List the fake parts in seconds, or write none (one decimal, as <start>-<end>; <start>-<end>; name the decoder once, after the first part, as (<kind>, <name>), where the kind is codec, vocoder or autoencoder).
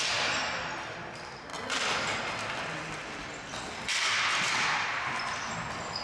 none